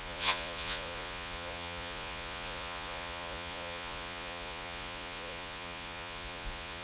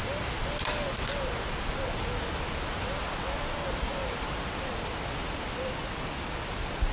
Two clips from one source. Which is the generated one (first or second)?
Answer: first